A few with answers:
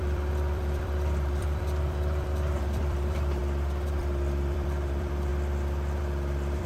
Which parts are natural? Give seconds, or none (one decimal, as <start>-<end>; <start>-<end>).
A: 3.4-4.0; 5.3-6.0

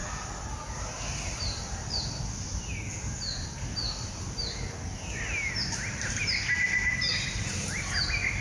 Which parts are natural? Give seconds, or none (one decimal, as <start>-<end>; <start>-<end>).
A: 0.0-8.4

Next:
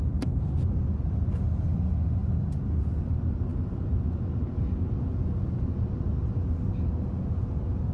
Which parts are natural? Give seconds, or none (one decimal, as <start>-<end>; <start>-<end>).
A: 0.0-7.9

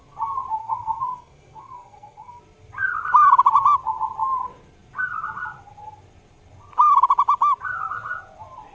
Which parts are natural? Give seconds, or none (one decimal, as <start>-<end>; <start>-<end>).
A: 0.0-0.6; 2.4-8.7